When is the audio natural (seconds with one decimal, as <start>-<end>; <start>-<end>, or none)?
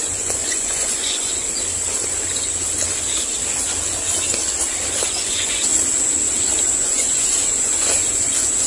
1.3-5.1; 5.7-6.7